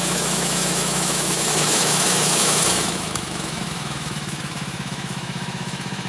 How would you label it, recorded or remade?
remade